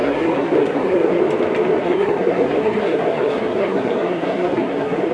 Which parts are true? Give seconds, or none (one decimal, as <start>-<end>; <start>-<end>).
1.2-1.8